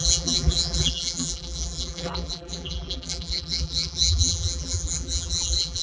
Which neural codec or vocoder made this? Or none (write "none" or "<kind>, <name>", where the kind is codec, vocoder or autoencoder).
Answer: vocoder, BigVGAN v2